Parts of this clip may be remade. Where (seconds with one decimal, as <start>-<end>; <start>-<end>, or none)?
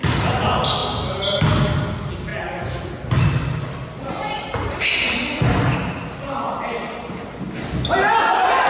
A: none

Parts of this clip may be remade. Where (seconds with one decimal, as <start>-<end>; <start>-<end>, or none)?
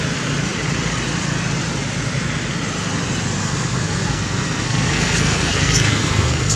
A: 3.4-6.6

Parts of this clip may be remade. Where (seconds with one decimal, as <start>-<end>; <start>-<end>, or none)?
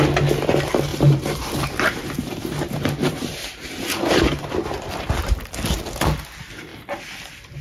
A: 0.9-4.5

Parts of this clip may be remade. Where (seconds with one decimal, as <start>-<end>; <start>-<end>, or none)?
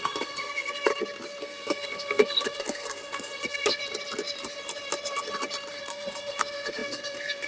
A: 0.0-0.9; 1.4-3.8; 5.8-7.5